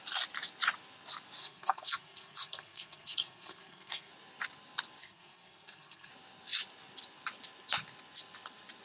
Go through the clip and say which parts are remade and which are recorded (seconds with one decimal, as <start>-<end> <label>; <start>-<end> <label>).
0.0-1.4 recorded; 1.4-4.1 remade; 4.1-5.0 recorded; 5.0-6.1 remade; 6.1-8.8 recorded